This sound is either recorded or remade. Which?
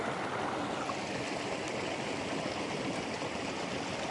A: recorded